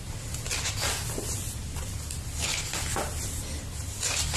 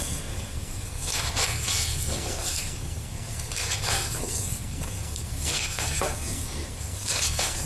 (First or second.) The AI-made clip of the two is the second